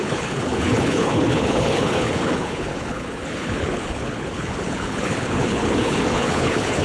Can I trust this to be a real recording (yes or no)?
no